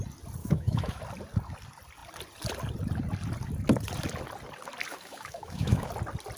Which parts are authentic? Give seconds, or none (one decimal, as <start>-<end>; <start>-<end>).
0.0-0.4; 1.0-4.9; 5.9-6.4